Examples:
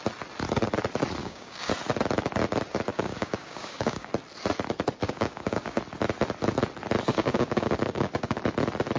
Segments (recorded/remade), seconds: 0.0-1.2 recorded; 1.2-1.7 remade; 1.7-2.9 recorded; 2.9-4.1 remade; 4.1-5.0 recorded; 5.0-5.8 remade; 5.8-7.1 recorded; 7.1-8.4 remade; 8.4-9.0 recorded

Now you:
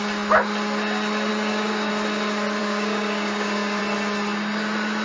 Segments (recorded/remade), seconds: 0.0-1.3 recorded; 1.3-1.9 remade; 1.9-2.6 recorded; 2.6-3.8 remade; 3.8-5.0 recorded

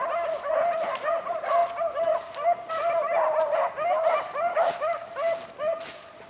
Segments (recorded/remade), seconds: 0.0-4.5 recorded; 4.5-5.1 remade; 5.1-6.3 recorded